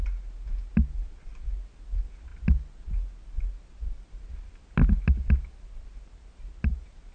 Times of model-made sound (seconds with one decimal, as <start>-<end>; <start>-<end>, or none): none